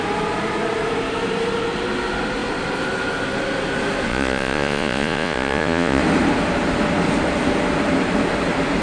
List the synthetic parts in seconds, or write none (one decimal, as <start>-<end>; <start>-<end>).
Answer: 4.1-6.0